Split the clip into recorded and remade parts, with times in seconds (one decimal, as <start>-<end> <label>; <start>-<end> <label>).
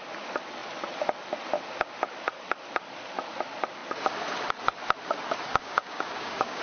0.0-5.5 recorded; 5.5-6.6 remade